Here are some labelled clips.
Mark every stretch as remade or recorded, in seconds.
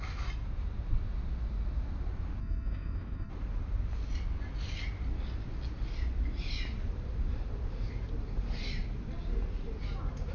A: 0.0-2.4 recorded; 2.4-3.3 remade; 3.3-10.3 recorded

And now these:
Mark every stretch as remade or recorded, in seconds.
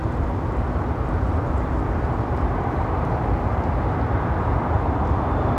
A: 0.0-3.4 remade; 3.4-5.6 recorded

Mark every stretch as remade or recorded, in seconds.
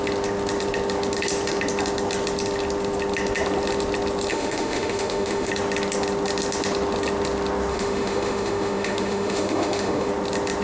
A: 0.0-4.3 recorded; 4.3-5.5 remade; 5.5-7.7 recorded; 7.7-10.1 remade; 10.1-10.6 recorded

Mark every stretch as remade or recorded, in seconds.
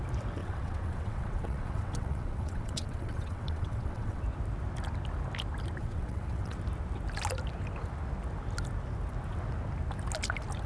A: 0.0-0.4 recorded; 0.4-4.2 remade; 4.2-5.8 recorded; 5.8-6.6 remade; 6.6-10.7 recorded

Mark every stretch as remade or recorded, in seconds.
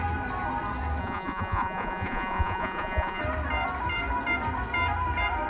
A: 0.0-1.0 recorded; 1.0-3.2 remade; 3.2-5.5 recorded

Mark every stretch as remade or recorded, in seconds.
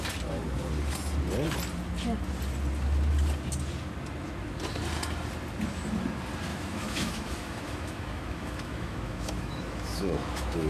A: 0.0-6.5 recorded; 6.5-10.7 remade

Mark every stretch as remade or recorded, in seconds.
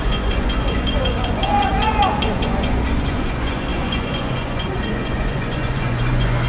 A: 0.0-6.5 remade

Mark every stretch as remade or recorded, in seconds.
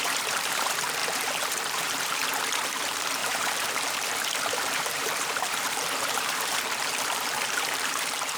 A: 0.0-1.0 remade; 1.0-1.7 recorded; 1.7-2.2 remade; 2.2-2.8 recorded; 2.8-8.4 remade